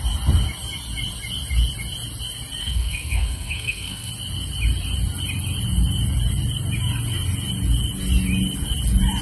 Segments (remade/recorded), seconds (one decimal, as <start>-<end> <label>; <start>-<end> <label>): 0.0-2.6 recorded; 2.6-4.1 remade; 4.1-9.2 recorded